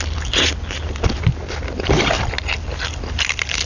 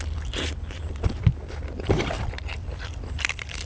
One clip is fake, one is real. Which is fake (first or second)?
second